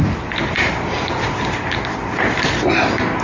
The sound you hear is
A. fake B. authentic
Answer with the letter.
B